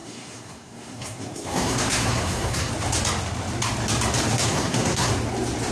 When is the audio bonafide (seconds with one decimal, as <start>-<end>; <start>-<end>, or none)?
2.7-4.4; 5.1-5.7

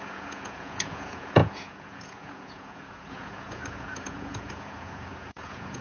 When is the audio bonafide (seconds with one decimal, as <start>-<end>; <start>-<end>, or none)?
none